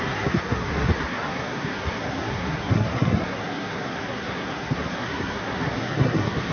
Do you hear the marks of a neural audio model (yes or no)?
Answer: yes